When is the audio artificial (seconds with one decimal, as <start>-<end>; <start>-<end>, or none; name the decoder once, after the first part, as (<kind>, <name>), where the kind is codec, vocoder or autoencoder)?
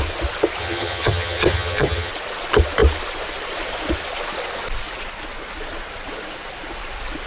0.6-2.1 (vocoder, HiFi-GAN)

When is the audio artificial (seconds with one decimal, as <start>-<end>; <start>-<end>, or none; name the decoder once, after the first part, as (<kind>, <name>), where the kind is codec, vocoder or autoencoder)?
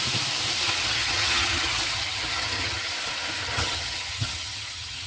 0.8-2.9 (vocoder, HiFi-GAN); 3.4-5.1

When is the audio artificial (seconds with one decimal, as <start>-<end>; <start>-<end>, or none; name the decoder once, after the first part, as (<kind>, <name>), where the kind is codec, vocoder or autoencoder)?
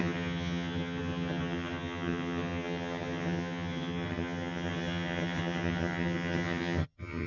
0.0-7.3 (vocoder, HiFi-GAN)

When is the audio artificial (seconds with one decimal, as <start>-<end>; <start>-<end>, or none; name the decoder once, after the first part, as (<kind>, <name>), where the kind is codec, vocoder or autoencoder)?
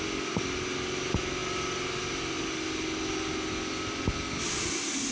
none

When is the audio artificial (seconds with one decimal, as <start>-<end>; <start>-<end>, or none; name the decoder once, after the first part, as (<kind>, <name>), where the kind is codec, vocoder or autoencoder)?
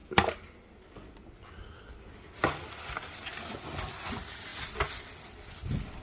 none